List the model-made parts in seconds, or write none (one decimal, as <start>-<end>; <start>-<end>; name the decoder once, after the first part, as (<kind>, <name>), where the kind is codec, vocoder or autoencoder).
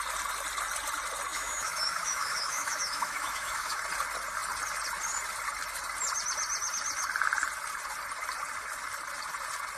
1.3-3.8 (autoencoder, DAC-VAE)